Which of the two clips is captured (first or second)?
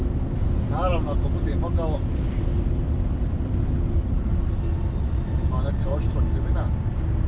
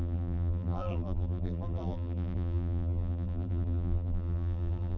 first